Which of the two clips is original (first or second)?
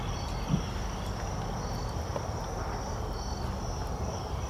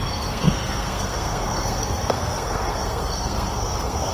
first